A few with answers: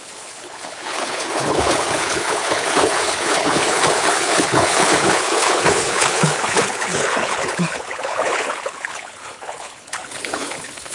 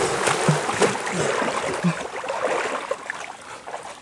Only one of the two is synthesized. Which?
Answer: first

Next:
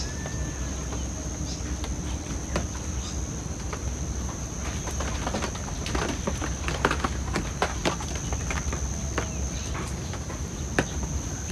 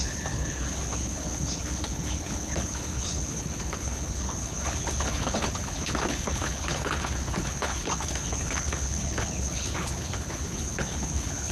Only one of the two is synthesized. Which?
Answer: second